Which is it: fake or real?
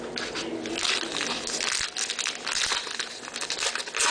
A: real